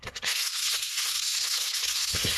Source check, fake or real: fake